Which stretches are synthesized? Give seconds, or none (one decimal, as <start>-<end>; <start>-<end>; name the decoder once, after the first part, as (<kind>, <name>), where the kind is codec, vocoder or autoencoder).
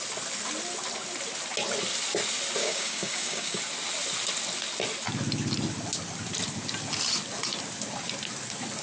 2.6-3.6 (codec, DAC)